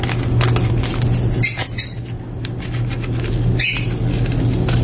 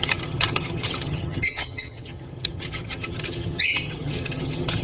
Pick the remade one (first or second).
second